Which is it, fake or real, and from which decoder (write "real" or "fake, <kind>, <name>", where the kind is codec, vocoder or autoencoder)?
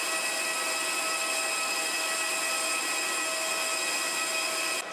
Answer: real